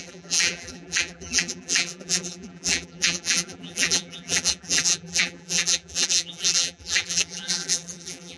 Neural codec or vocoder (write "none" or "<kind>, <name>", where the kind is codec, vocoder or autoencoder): vocoder, BigVGAN v2